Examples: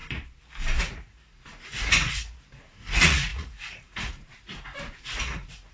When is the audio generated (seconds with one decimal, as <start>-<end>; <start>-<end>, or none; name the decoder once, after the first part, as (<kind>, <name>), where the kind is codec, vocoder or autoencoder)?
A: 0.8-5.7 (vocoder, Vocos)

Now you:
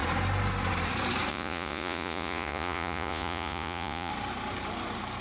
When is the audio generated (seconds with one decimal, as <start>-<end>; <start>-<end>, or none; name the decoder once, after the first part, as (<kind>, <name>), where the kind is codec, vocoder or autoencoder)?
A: 1.3-4.1 (vocoder, Vocos)

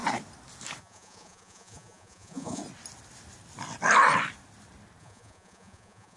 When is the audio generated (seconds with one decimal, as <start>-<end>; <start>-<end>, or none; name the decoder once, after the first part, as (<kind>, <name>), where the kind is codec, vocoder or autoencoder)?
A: 0.8-2.6 (vocoder, Vocos); 5.0-6.2

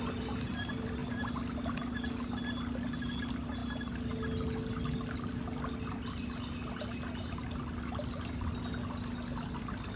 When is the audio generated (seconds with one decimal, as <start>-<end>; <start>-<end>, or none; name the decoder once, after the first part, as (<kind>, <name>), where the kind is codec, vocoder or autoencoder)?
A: none

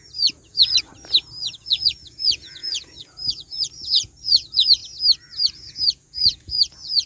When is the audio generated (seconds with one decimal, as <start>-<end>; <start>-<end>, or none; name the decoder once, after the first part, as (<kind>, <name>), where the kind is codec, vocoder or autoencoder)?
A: 0.0-0.9 (vocoder, Vocos); 1.4-4.8; 5.4-7.1

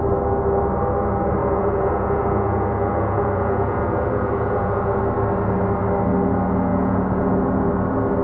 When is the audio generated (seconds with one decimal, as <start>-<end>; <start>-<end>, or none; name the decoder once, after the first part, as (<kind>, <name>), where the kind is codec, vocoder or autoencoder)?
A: 1.4-5.0 (vocoder, Vocos); 6.7-7.7